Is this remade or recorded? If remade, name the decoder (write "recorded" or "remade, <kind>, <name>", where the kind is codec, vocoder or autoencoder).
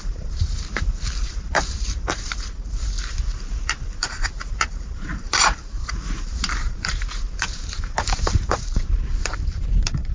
remade, vocoder, BigVGAN v2